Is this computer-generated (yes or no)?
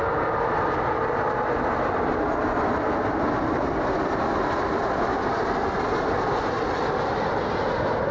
no